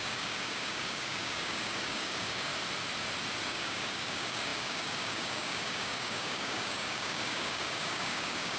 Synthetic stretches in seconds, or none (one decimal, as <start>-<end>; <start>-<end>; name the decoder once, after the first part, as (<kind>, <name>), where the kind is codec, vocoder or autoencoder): 0.0-2.5 (codec, DAC); 3.5-8.6